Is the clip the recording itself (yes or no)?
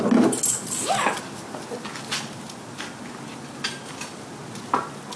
yes